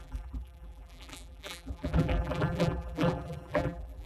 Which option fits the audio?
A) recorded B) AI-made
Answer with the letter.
B